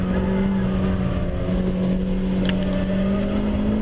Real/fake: real